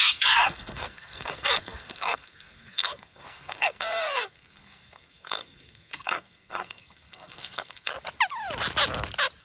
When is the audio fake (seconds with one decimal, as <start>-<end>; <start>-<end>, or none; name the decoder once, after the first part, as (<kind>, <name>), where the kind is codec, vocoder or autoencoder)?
0.0-7.9 (codec, SNAC)